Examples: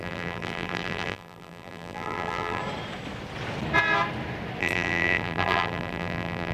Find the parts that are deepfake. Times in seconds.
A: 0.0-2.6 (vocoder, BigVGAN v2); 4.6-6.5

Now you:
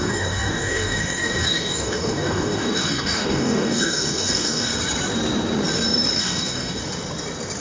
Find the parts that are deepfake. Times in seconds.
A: 0.0-4.7 (codec, DAC); 6.2-6.8

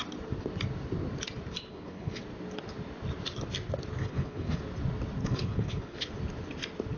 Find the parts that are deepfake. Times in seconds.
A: 1.7-2.2 (codec, HILCodec); 4.0-4.6; 5.2-6.1

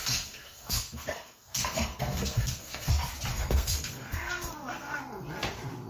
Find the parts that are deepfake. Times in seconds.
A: 0.0-2.9 (codec, SNAC); 3.3-5.0